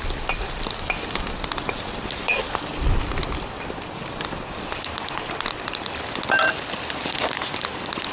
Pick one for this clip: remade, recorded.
recorded